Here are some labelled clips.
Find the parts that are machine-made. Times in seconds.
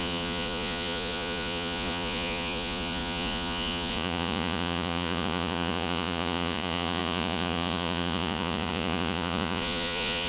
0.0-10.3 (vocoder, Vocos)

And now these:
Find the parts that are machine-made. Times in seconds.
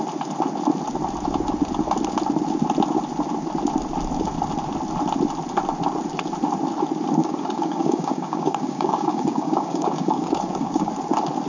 7.2-10.9 (codec, DAC)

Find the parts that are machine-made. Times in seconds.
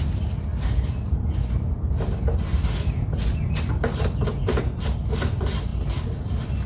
none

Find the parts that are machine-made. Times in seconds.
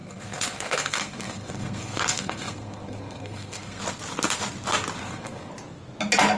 0.0-3.8 (codec, SNAC); 5.0-5.5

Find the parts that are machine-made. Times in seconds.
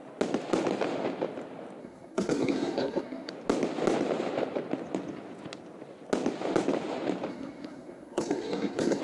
1.8-3.3 (codec, SNAC); 7.3-9.0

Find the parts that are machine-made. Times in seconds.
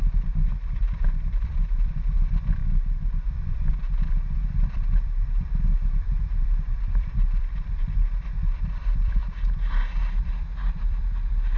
0.0-2.6 (vocoder, BigVGAN v2); 3.3-9.2; 10.0-11.6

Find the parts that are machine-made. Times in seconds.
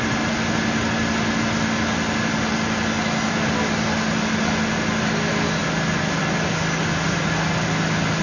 none